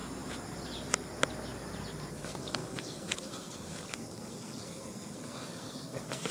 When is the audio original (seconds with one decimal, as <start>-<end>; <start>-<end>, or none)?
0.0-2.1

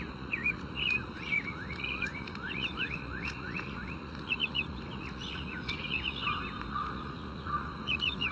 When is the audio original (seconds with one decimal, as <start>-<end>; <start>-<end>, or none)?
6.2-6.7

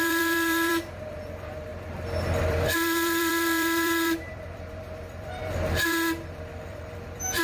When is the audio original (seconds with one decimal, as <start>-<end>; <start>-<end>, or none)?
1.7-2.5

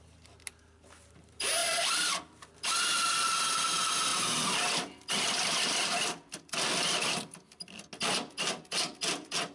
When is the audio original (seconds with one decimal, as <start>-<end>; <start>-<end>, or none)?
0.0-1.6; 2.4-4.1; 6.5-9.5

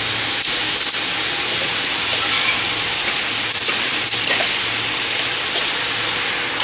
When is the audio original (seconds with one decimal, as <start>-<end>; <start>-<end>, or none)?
0.0-1.6; 5.6-6.6

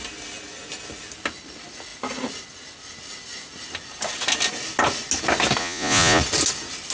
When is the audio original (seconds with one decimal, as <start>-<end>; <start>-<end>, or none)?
0.0-5.6; 6.2-6.9